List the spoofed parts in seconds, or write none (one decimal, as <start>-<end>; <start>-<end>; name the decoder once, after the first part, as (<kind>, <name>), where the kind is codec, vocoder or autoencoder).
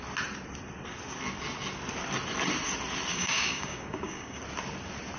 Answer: 3.1-4.4 (codec, DAC)